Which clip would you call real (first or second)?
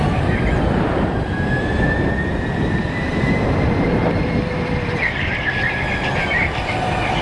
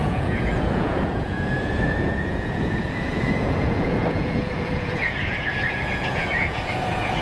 first